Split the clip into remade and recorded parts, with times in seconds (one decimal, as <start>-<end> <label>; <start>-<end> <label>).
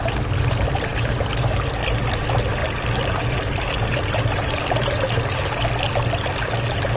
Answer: 0.0-2.6 recorded; 2.6-5.6 remade; 5.6-7.0 recorded